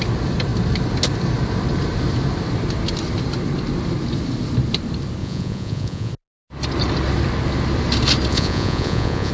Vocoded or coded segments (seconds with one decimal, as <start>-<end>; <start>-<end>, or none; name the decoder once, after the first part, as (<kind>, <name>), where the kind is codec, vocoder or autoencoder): 5.2-6.1 (vocoder, Vocos); 8.3-9.3